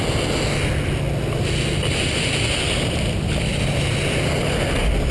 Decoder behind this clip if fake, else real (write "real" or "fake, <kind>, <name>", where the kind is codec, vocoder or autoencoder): real